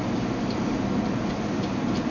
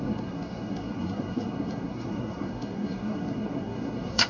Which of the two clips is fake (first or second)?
second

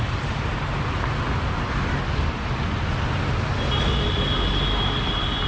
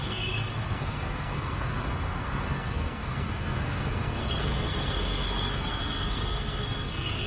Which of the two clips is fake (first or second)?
second